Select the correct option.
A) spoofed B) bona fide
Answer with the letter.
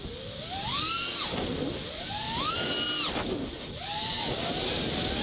B